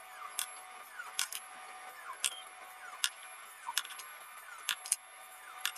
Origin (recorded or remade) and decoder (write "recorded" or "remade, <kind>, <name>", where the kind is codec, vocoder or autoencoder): recorded